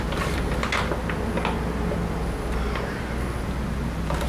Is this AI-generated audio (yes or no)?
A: no